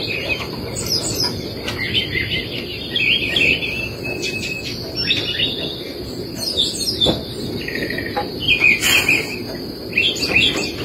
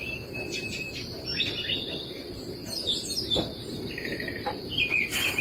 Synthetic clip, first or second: second